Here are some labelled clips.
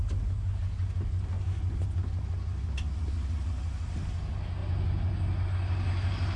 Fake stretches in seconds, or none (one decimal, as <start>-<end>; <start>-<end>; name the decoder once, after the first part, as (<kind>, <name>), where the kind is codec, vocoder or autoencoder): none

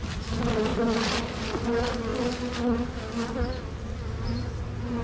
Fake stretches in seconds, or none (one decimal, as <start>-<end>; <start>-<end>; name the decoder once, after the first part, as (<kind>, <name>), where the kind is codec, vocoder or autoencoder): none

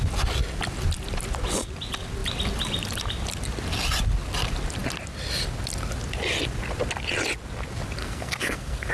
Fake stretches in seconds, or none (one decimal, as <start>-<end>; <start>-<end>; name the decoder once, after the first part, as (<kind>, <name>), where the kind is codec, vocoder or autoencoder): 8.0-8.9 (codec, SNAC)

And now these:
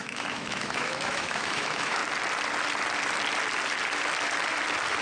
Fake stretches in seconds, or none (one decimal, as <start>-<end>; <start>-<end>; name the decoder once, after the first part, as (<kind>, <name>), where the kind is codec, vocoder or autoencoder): 0.0-2.0 (autoencoder, DAC-VAE)